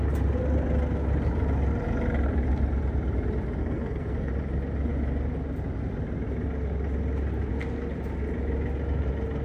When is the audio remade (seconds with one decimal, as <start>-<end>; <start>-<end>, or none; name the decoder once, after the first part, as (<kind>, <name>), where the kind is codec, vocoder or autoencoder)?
3.6-4.3 (codec, SNAC)